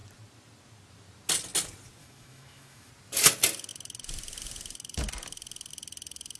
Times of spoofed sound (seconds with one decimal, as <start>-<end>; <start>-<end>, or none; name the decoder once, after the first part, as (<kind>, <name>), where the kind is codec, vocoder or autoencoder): 2.0-2.9 (autoencoder, DAC-VAE)